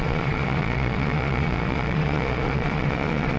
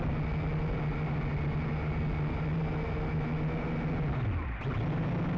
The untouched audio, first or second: second